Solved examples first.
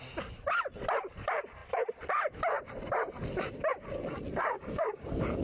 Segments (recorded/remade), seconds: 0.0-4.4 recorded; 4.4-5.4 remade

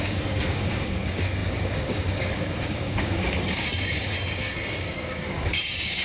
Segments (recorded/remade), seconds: 0.0-6.0 remade